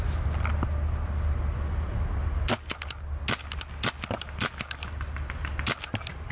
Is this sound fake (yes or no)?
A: no